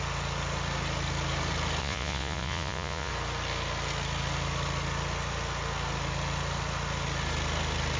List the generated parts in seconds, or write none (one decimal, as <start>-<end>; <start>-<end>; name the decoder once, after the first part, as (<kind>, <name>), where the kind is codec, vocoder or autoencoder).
1.8-3.1 (vocoder, Vocos)